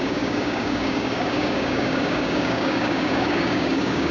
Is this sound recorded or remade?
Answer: remade